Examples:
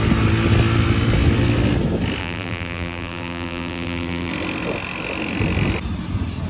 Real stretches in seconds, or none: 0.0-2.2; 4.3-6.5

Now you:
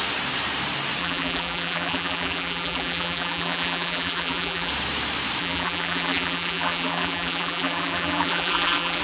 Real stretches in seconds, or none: 0.0-1.0; 4.7-5.4